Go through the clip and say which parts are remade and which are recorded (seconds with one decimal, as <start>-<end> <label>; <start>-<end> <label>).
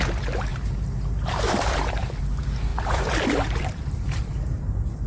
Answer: 0.0-0.5 recorded; 0.5-2.2 remade; 2.2-2.7 recorded; 2.7-4.3 remade; 4.3-5.1 recorded